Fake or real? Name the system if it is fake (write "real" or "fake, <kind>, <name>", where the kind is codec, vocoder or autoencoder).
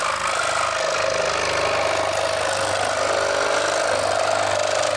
real